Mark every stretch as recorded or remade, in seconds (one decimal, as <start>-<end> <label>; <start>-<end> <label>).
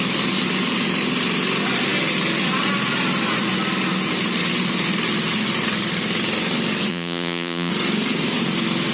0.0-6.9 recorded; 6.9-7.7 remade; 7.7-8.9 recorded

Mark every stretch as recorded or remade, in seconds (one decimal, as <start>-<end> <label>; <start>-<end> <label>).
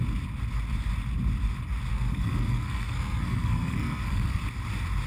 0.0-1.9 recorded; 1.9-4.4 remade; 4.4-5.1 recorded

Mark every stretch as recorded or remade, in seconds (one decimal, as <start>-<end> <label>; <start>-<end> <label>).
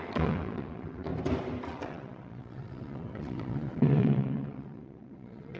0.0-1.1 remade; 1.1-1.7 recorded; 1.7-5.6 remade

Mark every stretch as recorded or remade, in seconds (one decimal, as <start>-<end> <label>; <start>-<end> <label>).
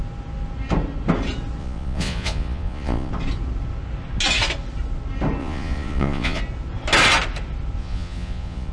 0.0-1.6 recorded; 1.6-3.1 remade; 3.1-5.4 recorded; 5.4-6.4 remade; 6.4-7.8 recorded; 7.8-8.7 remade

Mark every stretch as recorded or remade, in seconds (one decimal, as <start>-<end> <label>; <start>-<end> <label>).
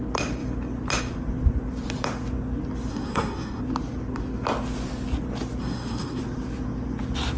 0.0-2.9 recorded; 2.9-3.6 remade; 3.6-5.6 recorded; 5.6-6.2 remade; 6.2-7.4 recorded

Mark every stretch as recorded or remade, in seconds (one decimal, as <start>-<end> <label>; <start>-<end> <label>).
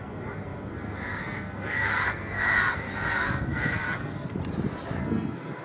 0.0-4.4 remade; 4.4-5.0 recorded; 5.0-5.6 remade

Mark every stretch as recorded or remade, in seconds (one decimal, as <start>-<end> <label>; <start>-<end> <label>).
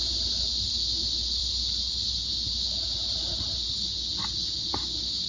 0.0-5.3 recorded